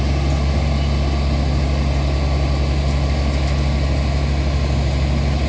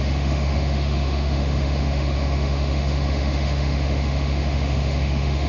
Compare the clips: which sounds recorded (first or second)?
first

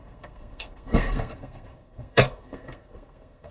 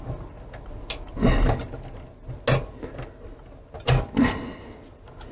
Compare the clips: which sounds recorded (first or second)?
second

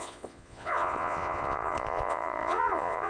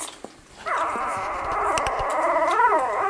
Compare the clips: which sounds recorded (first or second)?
second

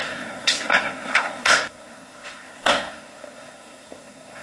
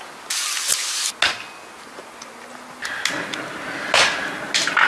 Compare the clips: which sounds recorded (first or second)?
second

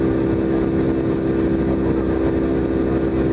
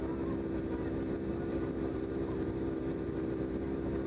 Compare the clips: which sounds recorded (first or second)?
first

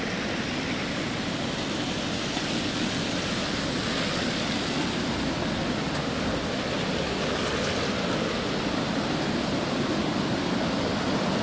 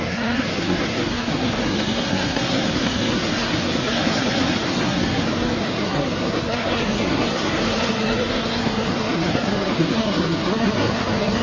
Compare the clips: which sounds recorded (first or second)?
first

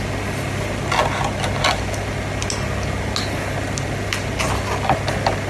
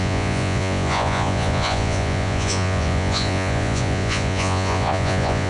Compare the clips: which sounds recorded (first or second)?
first